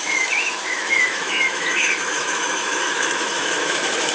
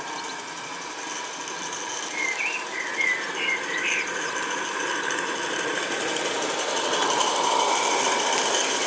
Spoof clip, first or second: first